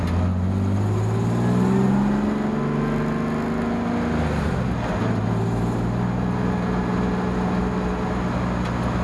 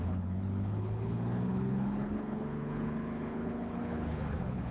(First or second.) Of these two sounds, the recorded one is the first